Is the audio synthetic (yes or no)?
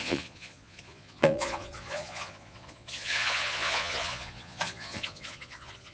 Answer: yes